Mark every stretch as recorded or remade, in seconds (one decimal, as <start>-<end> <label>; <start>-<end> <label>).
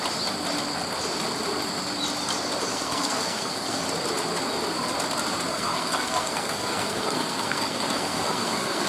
0.0-2.7 recorded; 2.7-3.8 remade; 3.8-5.5 recorded; 5.5-8.9 remade